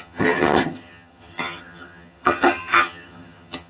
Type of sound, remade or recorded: remade